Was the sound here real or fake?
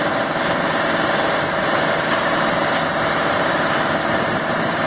fake